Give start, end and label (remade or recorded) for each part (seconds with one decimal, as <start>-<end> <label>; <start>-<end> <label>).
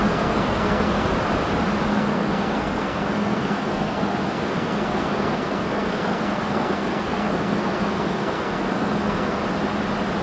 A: 0.0-1.1 remade; 1.1-1.9 recorded; 1.9-9.4 remade; 9.4-10.2 recorded